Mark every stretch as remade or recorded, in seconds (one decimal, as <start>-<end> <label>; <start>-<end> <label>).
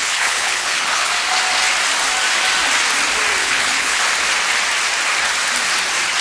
0.0-1.1 remade; 1.1-3.4 recorded; 3.4-4.0 remade; 4.0-6.2 recorded